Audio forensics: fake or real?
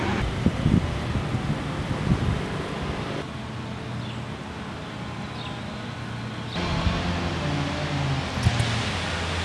real